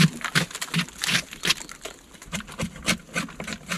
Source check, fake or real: real